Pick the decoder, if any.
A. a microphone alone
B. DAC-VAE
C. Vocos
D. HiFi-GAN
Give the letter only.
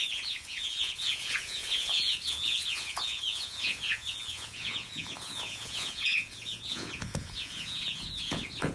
C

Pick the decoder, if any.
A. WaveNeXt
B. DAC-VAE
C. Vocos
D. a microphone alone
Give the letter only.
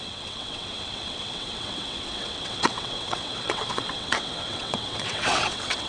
A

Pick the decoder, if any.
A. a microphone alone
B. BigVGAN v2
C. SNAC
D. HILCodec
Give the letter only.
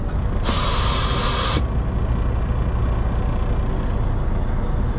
A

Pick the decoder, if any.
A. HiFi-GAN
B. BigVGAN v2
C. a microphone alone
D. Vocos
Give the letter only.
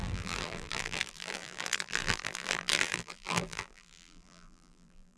B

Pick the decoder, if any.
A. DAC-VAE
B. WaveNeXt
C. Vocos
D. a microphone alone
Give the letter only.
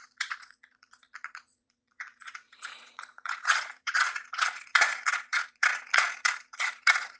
C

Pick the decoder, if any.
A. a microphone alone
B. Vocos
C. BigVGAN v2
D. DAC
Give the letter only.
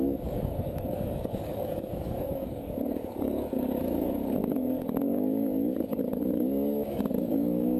D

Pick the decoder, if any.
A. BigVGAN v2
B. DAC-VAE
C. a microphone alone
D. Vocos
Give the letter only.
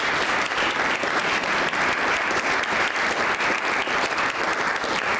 C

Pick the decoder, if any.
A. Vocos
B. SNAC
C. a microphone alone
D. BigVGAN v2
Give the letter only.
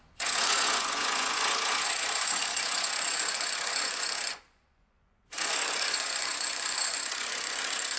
A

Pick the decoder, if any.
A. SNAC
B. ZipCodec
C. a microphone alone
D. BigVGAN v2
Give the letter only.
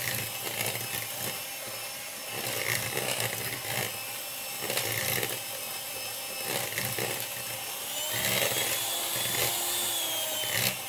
C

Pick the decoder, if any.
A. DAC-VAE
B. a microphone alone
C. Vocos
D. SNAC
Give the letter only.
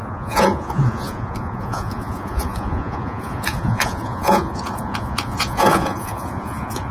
C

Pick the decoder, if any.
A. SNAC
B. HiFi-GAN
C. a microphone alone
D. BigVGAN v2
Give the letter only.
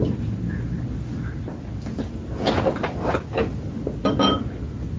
C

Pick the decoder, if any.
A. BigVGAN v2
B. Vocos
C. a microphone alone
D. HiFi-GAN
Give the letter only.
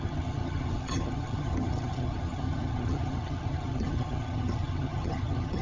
D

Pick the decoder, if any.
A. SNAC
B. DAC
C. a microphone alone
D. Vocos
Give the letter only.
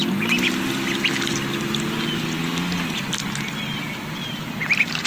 C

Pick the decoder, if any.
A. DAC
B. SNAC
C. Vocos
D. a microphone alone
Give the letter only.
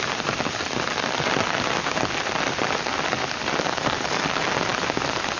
D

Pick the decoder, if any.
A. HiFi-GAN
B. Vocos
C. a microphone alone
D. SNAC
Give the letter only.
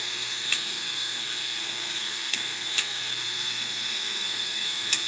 D